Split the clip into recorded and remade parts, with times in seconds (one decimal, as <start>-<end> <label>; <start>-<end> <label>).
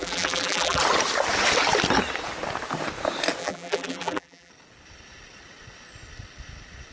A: 0.0-0.8 remade; 0.8-3.4 recorded; 3.4-4.5 remade; 4.5-6.9 recorded